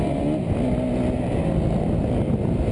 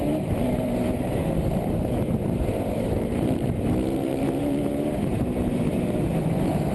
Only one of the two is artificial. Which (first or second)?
second